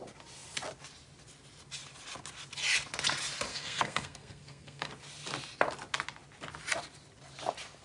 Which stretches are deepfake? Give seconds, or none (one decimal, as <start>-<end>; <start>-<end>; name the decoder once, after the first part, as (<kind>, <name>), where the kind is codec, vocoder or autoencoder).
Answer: 3.5-4.9 (codec, SNAC)